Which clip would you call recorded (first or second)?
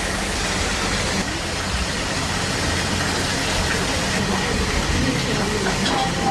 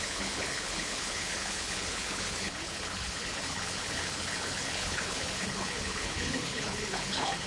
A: first